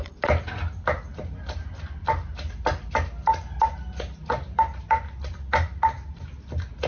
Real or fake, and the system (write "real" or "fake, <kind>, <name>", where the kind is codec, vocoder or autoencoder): real